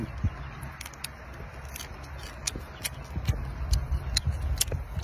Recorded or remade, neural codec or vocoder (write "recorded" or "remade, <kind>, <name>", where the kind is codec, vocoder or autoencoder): recorded